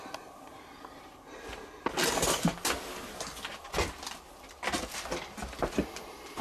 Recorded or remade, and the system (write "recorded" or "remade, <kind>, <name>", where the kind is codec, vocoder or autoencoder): recorded